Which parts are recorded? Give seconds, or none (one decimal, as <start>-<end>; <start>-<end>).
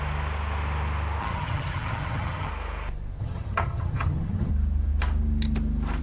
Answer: 0.0-1.2; 2.5-3.2; 4.5-6.0